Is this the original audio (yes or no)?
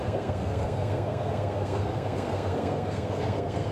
no